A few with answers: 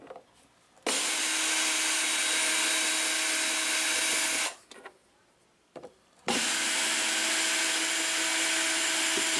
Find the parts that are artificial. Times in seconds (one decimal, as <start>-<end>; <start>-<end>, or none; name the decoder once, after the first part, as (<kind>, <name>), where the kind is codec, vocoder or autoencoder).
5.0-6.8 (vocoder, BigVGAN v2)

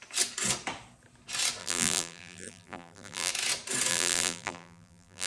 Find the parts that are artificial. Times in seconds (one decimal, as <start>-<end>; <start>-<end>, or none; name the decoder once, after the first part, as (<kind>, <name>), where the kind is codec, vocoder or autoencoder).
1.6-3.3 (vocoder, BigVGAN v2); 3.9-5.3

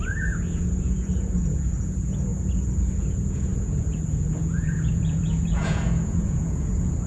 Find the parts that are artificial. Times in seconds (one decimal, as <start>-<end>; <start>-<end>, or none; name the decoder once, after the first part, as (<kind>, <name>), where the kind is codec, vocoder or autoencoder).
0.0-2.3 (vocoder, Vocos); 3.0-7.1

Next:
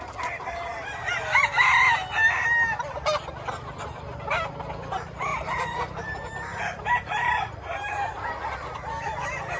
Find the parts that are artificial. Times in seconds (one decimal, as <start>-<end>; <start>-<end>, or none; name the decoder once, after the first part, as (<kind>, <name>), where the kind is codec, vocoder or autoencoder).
5.3-7.4 (vocoder, BigVGAN v2)

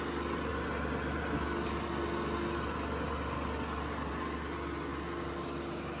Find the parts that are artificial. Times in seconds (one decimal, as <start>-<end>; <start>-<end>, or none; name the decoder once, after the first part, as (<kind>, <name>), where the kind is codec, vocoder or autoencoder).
none

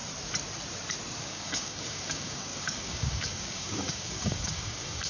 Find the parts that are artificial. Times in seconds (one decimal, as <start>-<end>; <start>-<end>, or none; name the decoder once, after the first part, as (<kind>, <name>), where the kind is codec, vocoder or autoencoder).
1.2-5.1 (codec, DAC)